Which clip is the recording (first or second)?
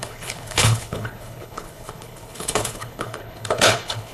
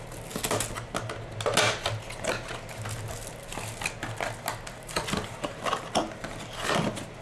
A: second